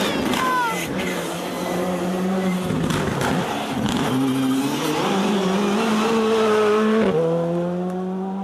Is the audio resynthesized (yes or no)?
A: no